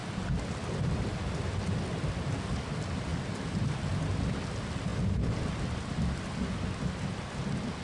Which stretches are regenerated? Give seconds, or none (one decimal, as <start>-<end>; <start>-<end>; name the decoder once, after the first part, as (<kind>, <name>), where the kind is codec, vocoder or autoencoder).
none